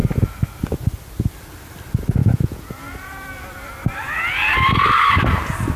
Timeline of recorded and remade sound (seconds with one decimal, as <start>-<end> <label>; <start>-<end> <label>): 0.0-2.2 recorded; 2.2-2.7 remade; 2.7-5.8 recorded

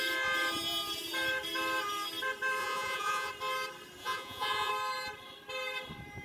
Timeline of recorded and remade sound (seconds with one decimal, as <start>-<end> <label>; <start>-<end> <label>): 0.0-2.6 recorded; 2.6-3.3 remade; 3.3-4.0 recorded; 4.0-4.7 remade; 4.7-6.2 recorded